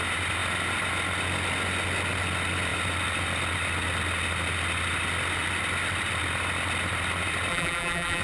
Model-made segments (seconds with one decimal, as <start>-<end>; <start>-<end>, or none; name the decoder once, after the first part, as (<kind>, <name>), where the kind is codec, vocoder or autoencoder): 7.5-8.2 (vocoder, BigVGAN v2)